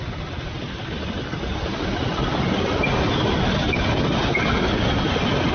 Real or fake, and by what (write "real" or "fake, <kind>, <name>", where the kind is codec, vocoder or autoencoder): real